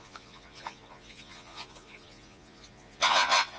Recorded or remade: remade